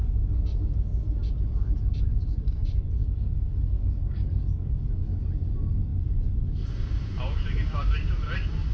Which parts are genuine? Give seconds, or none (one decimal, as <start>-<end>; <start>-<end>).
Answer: 0.0-3.0; 5.2-8.7